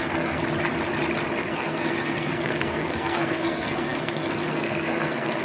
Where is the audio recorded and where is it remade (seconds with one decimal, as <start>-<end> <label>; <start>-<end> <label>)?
0.0-0.4 remade; 0.4-1.4 recorded; 1.4-5.4 remade